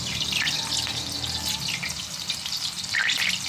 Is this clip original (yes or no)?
yes